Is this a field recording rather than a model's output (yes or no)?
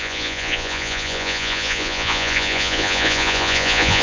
no